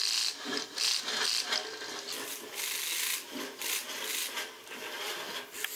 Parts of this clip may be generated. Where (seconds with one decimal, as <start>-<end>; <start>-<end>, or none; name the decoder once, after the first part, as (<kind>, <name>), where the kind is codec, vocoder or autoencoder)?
none